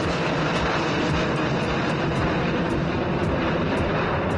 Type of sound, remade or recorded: remade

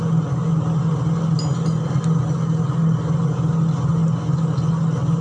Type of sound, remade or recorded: recorded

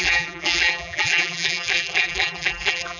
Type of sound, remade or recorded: remade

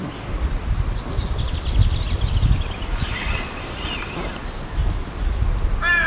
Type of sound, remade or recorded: recorded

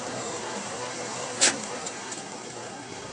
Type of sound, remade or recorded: remade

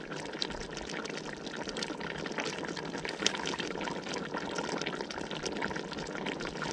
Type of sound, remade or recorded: recorded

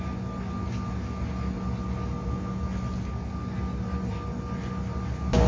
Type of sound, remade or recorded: recorded